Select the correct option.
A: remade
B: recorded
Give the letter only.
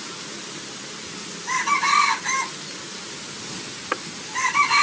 B